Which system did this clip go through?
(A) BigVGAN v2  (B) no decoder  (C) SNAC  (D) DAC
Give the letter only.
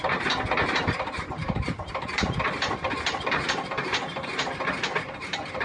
A